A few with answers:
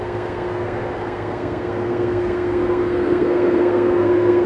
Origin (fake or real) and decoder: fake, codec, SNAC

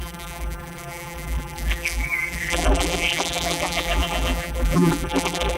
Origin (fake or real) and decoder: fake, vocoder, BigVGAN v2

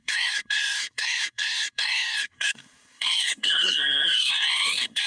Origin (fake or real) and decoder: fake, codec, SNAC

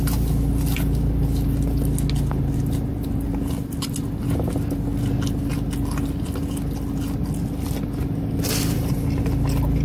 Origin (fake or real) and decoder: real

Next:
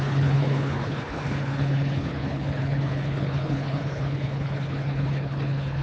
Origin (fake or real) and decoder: fake, codec, HILCodec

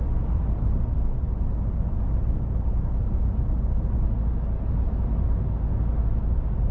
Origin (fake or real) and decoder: real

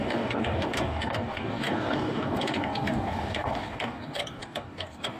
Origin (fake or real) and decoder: fake, codec, DAC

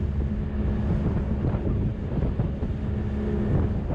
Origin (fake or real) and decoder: real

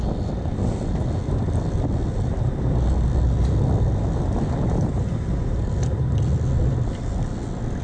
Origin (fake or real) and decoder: real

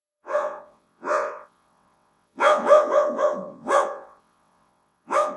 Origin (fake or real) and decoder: fake, vocoder, WaveNeXt